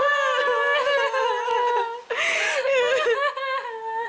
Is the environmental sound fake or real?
real